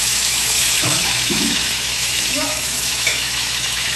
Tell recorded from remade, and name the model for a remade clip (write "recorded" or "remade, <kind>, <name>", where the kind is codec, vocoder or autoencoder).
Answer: remade, autoencoder, DAC-VAE